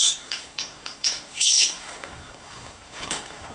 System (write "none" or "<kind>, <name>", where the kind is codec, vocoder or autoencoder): codec, SNAC